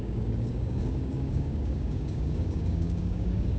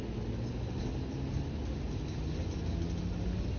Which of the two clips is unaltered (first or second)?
second